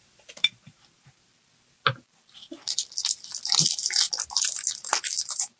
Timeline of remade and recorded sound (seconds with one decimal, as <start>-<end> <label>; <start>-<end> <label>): 0.0-1.3 remade; 1.3-3.5 recorded; 3.5-5.6 remade